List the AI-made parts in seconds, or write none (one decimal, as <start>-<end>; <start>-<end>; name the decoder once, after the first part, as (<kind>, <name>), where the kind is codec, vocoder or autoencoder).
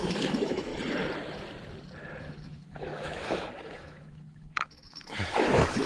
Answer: 0.0-0.7 (autoencoder, DAC-VAE); 2.2-5.9